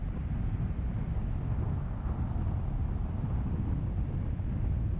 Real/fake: real